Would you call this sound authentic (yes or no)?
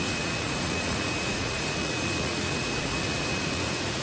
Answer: no